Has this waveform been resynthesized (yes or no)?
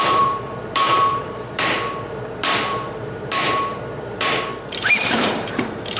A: yes